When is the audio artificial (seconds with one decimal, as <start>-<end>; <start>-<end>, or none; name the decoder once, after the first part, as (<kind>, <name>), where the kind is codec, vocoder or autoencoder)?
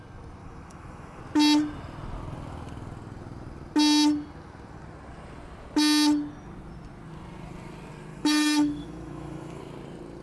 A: 0.4-1.2 (autoencoder, DAC-VAE); 8.1-9.6